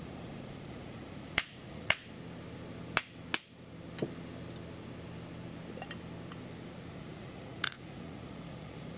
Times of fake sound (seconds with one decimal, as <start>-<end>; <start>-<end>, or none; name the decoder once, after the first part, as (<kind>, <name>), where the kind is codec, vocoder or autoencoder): 0.0-2.0 (vocoder, Vocos); 6.9-9.0